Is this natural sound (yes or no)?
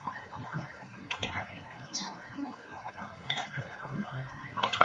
no